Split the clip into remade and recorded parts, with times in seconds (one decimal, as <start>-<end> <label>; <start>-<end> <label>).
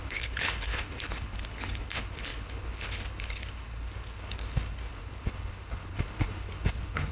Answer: 0.0-7.1 remade